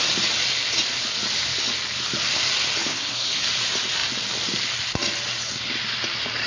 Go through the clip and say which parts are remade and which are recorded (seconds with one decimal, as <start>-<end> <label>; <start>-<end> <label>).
0.0-2.8 recorded; 2.8-3.5 remade; 3.5-6.5 recorded